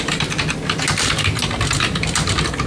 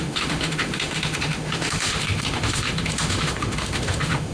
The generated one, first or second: second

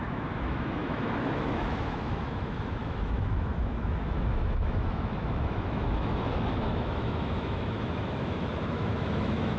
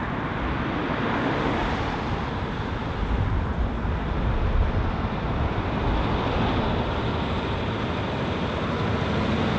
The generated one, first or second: first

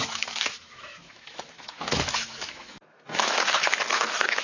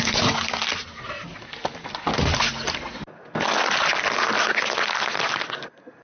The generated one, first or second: first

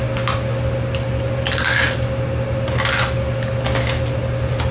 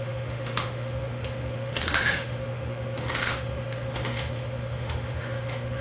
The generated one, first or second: second